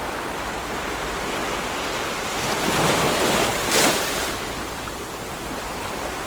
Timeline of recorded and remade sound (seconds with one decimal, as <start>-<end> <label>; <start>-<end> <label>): 0.0-2.6 remade; 2.6-3.5 recorded; 3.5-4.9 remade; 4.9-6.3 recorded